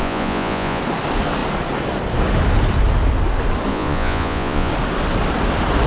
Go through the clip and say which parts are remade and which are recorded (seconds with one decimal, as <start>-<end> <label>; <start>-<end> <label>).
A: 0.0-0.8 remade; 0.8-3.7 recorded; 3.7-4.7 remade; 4.7-5.9 recorded